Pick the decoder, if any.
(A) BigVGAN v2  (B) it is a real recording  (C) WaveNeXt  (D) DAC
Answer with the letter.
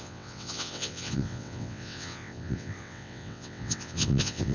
C